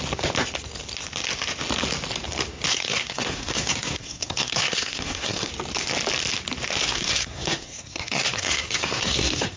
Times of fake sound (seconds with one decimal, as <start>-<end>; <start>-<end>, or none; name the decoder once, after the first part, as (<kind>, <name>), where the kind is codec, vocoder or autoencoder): 2.7-5.5 (codec, SNAC); 6.8-9.6